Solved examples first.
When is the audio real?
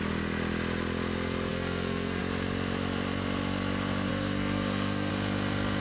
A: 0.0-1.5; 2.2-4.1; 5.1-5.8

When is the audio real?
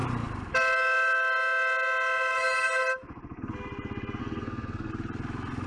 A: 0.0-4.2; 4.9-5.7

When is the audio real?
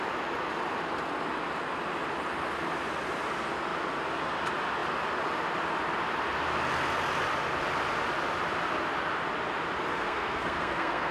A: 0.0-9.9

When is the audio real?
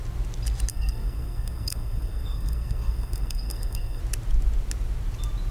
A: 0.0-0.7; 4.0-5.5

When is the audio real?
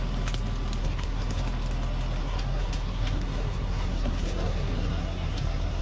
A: 0.0-0.8; 1.4-2.2